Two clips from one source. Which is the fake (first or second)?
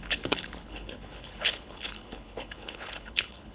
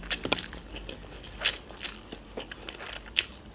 first